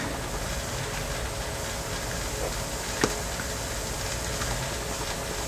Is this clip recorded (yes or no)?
yes